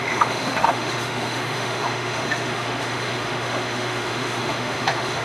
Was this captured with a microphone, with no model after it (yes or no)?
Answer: no